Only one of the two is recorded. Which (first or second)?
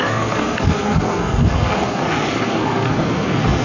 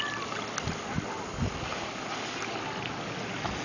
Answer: second